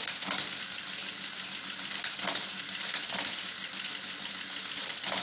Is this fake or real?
real